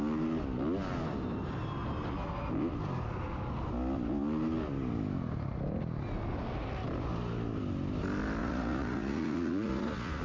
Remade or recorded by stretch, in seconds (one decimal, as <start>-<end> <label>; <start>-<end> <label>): 0.0-8.4 recorded; 8.4-10.2 remade